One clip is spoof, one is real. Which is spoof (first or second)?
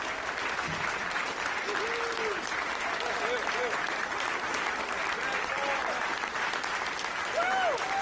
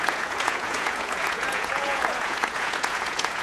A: second